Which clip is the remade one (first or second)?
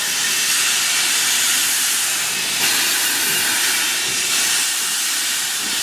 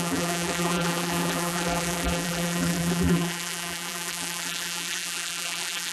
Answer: second